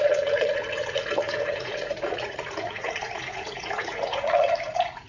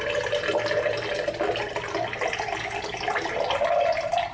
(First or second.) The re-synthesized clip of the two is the first